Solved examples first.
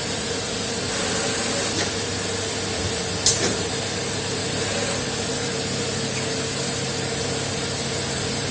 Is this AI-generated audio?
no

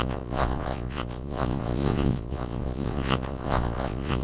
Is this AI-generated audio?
yes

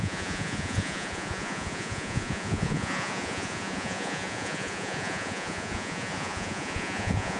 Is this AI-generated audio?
yes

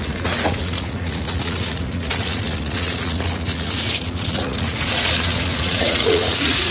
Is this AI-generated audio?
yes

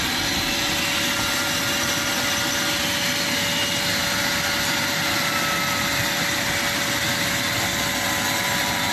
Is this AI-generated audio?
no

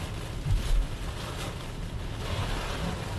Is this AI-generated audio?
no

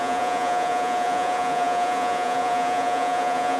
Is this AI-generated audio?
yes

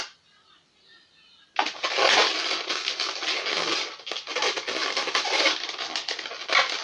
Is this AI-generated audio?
no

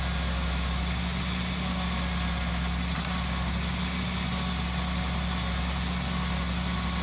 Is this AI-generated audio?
no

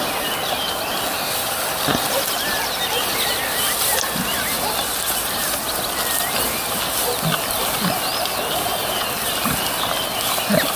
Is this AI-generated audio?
no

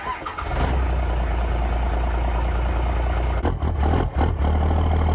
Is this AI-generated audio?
no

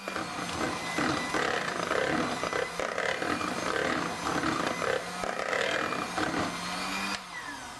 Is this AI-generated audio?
no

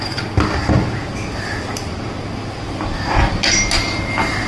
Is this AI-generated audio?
no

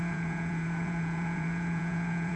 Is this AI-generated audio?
yes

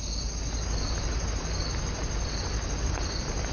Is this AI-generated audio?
no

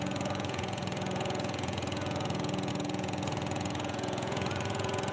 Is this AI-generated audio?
yes